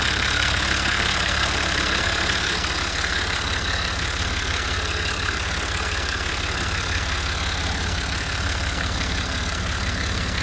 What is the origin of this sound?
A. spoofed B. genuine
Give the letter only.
A